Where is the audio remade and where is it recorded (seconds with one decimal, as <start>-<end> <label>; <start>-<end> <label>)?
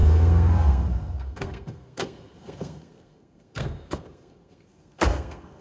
0.0-5.6 remade